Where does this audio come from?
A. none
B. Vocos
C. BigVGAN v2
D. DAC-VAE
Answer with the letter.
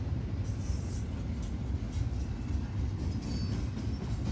A